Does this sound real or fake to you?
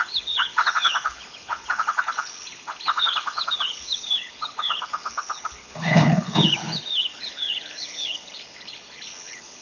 fake